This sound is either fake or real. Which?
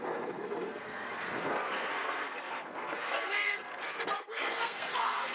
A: fake